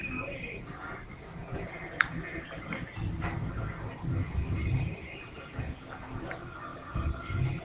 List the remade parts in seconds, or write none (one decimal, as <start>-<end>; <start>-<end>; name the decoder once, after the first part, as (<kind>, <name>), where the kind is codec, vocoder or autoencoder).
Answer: none